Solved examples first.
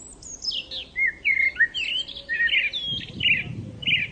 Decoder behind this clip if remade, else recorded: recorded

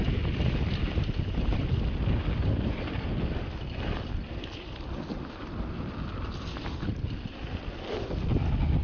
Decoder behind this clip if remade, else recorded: recorded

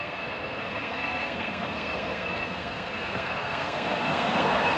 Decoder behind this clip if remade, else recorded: remade, codec, SNAC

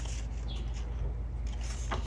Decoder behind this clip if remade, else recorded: recorded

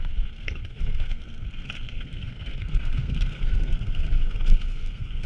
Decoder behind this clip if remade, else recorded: remade, codec, SNAC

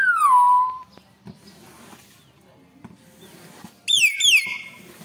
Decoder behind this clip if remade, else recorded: recorded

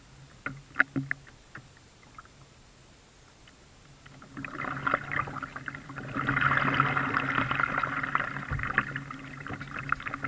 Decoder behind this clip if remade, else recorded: recorded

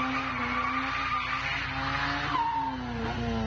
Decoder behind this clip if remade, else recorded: recorded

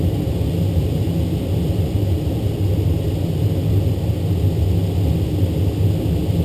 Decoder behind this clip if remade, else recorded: recorded